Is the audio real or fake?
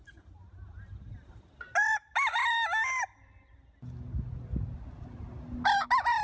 real